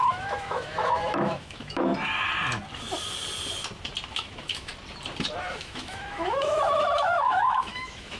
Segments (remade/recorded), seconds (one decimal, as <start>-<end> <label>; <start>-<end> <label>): 0.0-1.9 remade; 1.9-4.1 recorded; 4.1-4.7 remade; 4.7-5.5 recorded; 5.5-8.2 remade

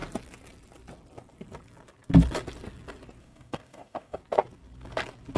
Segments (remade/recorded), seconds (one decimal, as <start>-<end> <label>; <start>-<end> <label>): 0.0-3.2 recorded; 3.2-4.2 remade; 4.2-5.4 recorded

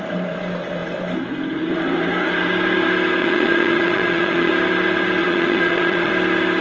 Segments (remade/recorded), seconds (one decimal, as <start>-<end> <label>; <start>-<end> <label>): 0.0-3.2 recorded; 3.2-4.5 remade; 4.5-5.2 recorded; 5.2-6.1 remade; 6.1-6.6 recorded

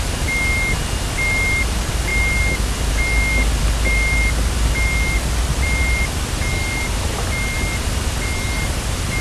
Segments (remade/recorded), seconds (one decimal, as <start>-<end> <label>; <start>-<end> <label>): 0.0-9.2 recorded

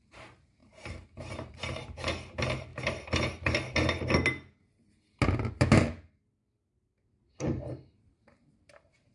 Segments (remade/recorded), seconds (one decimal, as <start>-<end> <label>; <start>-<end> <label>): 0.0-2.7 remade; 2.7-7.3 recorded; 7.3-9.1 remade

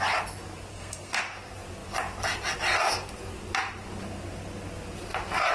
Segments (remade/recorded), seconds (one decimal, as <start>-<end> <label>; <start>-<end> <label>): 0.0-0.7 recorded; 0.7-1.2 remade; 1.2-5.5 recorded